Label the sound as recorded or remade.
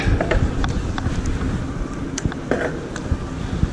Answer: recorded